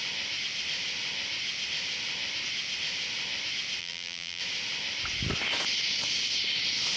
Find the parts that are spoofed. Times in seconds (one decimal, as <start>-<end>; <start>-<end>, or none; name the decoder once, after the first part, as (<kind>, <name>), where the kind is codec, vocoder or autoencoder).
3.8-4.4 (vocoder, BigVGAN v2)